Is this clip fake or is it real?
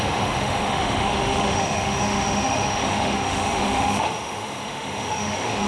fake